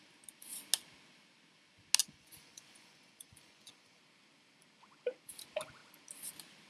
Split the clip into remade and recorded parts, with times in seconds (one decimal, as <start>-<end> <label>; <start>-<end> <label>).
0.0-2.0 recorded; 2.0-4.0 remade; 4.0-6.7 recorded